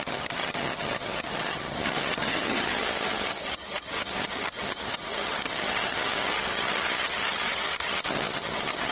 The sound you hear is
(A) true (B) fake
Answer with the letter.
B